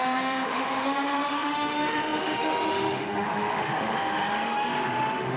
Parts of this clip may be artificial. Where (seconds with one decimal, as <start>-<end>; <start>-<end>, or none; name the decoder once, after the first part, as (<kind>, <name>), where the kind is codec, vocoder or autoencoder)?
0.0-5.4 (autoencoder, DAC-VAE)